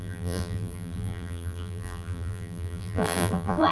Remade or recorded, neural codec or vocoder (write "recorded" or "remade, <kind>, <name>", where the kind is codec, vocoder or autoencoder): remade, vocoder, BigVGAN v2